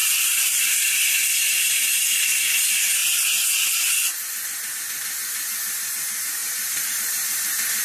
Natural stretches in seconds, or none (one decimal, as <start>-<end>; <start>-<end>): 0.7-6.4; 7.0-7.8

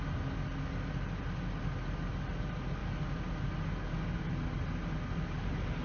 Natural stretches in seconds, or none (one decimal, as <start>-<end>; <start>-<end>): 0.0-5.8

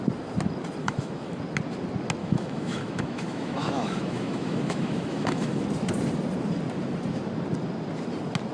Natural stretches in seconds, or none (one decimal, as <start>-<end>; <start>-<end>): 0.0-0.8; 1.3-2.2; 5.6-8.5

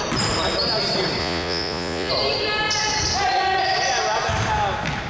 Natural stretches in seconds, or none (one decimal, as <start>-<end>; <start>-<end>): 0.0-1.2; 2.1-5.1

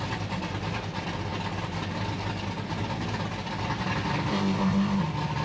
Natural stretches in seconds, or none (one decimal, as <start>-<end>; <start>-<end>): 0.0-4.3; 5.0-5.4